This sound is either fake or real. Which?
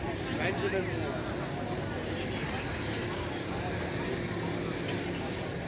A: real